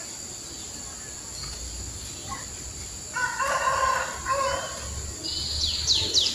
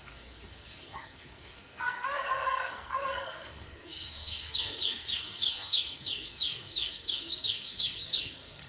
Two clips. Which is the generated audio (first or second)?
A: second